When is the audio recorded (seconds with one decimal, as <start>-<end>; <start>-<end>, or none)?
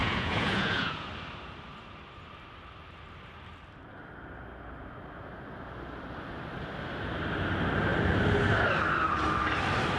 1.1-10.0